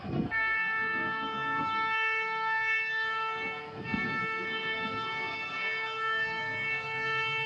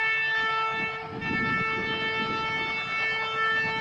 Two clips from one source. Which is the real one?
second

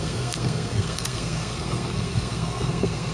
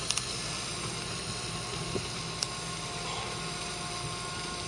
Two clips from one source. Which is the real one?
second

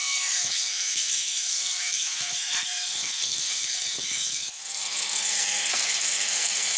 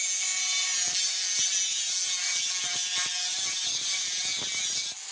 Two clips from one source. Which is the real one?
second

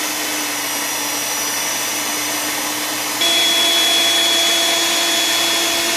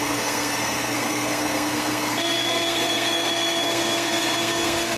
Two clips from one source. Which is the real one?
first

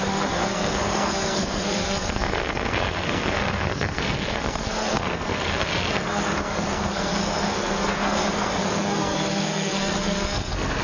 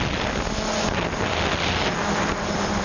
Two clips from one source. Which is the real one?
second